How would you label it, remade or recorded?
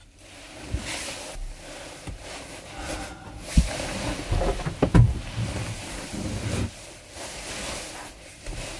recorded